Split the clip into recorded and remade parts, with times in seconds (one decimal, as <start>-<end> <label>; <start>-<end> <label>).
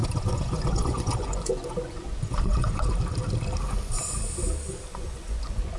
0.0-2.9 remade; 2.9-4.9 recorded; 4.9-5.8 remade